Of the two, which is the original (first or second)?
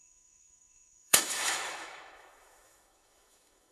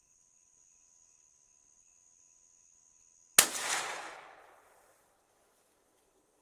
second